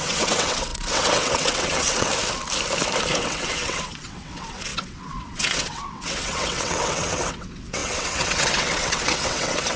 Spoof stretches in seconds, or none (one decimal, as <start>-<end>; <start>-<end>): 0.0-2.1; 3.2-9.8